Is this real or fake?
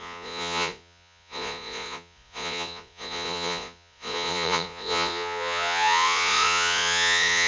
fake